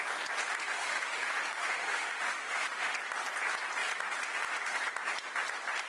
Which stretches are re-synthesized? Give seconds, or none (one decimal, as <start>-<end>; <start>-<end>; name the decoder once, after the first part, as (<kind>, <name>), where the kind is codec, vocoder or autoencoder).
0.6-2.9 (autoencoder, DAC-VAE)